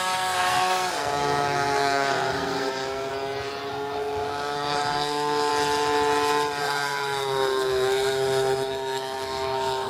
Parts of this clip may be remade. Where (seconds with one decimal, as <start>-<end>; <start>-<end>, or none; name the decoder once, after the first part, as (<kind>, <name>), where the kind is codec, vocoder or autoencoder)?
0.0-3.1 (codec, SNAC); 3.7-5.5; 6.6-9.9